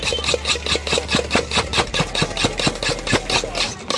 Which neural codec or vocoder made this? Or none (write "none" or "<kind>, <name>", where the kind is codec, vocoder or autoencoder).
none